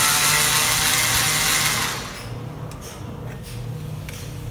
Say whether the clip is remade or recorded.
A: recorded